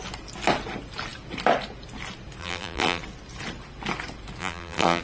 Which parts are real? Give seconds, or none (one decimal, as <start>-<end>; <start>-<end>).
0.0-2.4; 3.0-4.4